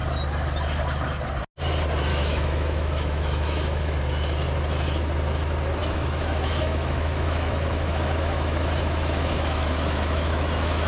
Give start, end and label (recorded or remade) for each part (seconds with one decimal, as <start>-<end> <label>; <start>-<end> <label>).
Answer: 0.0-2.1 recorded; 2.1-4.0 remade; 4.0-5.8 recorded; 5.8-10.9 remade